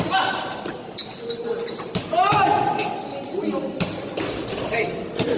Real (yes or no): yes